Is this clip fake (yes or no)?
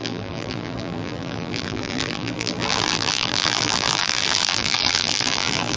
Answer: yes